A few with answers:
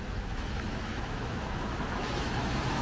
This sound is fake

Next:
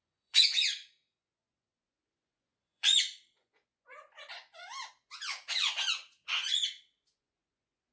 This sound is fake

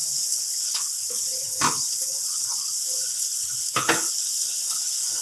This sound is fake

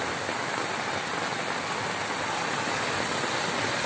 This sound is real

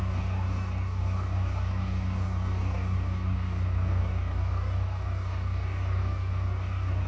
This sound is fake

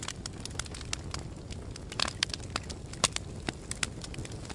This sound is real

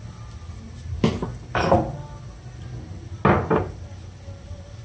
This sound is real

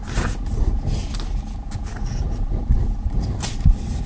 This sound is real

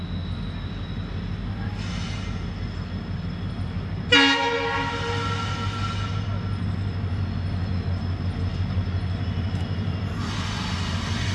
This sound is real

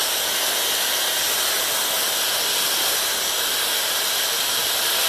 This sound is real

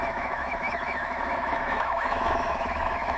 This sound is fake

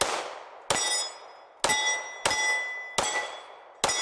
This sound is real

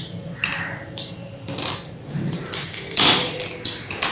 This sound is fake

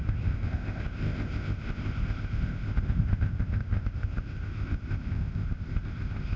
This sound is fake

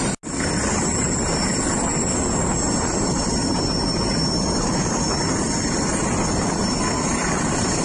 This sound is real